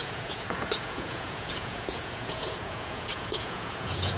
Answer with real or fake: fake